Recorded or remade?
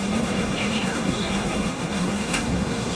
remade